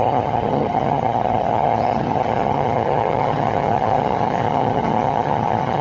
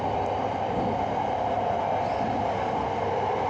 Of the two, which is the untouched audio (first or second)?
second